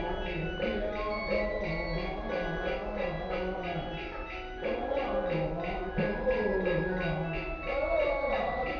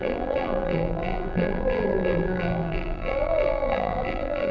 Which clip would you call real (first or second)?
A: first